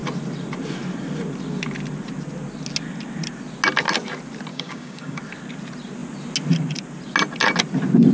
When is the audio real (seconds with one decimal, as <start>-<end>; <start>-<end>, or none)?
0.0-4.5; 5.2-8.1